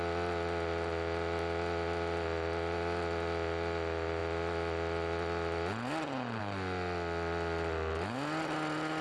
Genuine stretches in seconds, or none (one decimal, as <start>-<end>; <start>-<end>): 0.0-9.0